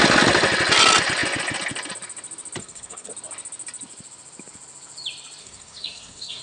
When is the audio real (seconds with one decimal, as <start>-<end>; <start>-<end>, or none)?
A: 0.0-2.6; 3.1-5.4